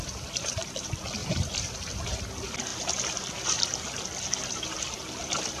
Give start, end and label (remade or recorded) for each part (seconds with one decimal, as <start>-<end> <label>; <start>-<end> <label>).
0.0-1.2 recorded; 1.2-2.0 remade; 2.0-5.6 recorded